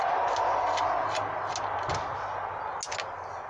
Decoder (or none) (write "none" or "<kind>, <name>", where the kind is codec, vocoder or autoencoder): none